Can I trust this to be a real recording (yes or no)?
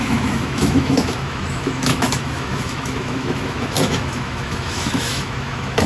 no